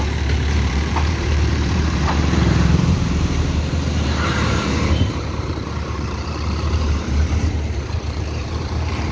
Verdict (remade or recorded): remade